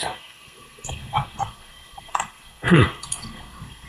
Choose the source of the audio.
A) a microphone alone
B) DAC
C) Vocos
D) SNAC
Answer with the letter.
D